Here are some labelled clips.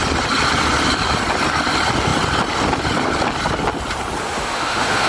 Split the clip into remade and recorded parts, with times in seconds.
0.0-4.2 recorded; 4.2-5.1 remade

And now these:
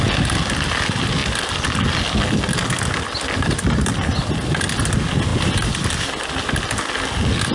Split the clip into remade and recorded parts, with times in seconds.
0.0-7.5 recorded

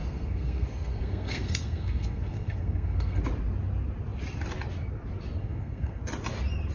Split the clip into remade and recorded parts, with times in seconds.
0.0-3.2 remade; 3.2-5.4 recorded; 5.4-6.0 remade; 6.0-6.7 recorded

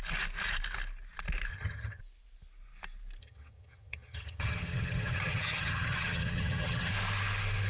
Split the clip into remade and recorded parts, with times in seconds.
0.0-1.5 recorded; 1.5-2.0 remade; 2.0-3.2 recorded; 3.2-6.9 remade; 6.9-7.7 recorded

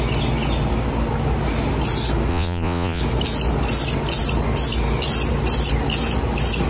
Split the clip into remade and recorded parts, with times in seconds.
0.0-2.3 recorded; 2.3-3.0 remade; 3.0-6.7 recorded

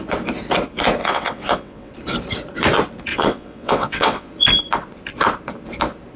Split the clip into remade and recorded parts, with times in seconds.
0.0-1.0 recorded; 1.0-1.9 remade; 1.9-3.1 recorded; 3.1-4.3 remade; 4.3-6.2 recorded

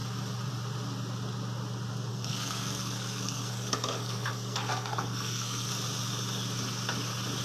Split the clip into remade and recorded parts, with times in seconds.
0.0-2.1 recorded; 2.1-5.7 remade; 5.7-7.4 recorded